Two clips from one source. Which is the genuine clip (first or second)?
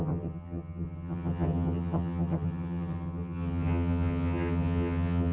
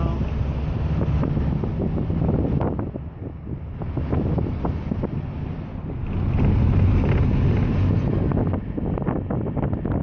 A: second